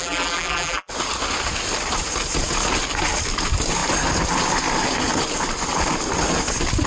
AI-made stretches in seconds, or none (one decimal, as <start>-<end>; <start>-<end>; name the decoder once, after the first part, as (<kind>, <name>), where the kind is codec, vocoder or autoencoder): 0.0-0.9 (vocoder, BigVGAN v2)